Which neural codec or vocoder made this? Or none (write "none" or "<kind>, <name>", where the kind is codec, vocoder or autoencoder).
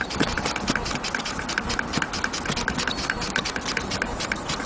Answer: none